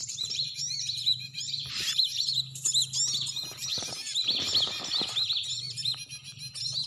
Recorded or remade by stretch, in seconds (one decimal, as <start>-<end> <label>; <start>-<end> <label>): 0.0-2.4 remade; 2.4-6.9 recorded